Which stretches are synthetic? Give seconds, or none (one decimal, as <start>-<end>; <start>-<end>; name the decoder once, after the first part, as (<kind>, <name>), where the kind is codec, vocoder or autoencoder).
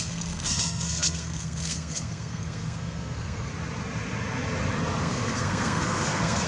0.0-3.5 (codec, SNAC); 5.0-6.5